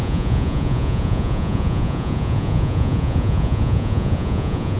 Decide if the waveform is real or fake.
fake